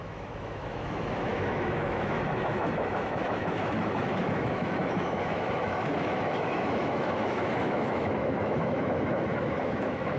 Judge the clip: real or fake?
fake